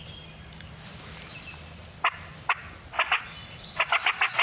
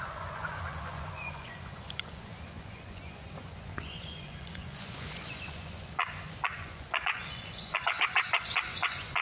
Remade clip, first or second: second